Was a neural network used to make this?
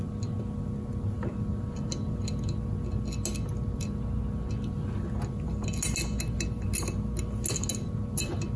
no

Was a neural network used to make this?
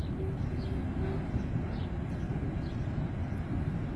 no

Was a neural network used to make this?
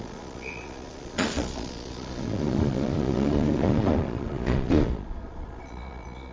yes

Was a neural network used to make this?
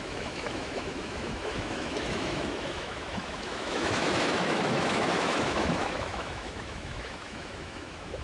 yes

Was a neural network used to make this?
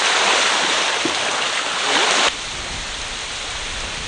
no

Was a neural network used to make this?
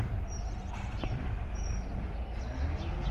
yes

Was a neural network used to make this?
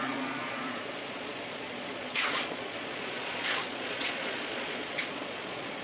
yes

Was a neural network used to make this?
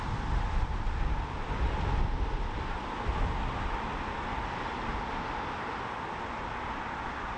no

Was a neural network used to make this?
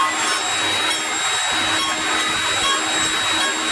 no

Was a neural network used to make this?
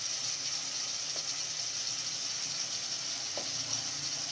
no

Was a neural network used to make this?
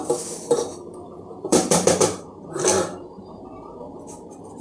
yes